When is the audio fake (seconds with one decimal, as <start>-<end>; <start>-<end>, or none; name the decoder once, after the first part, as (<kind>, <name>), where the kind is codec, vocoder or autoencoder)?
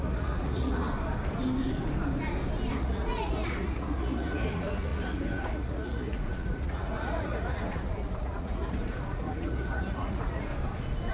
0.0-0.9 (vocoder, Vocos); 2.7-10.5